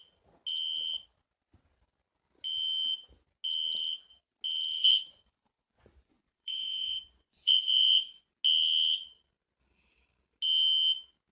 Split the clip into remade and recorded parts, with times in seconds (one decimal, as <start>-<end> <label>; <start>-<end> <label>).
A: 0.0-4.8 recorded; 4.8-8.3 remade; 8.3-11.3 recorded